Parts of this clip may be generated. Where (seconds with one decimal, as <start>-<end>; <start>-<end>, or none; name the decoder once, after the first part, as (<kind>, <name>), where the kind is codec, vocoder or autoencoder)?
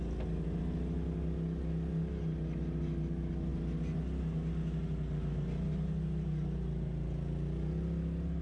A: none